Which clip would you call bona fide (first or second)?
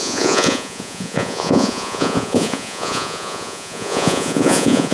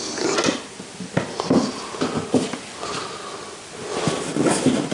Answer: second